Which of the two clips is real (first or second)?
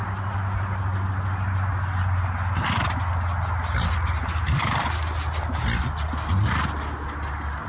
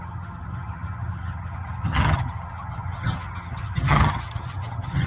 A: first